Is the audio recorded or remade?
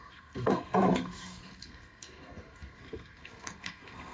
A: remade